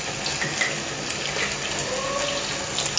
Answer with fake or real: real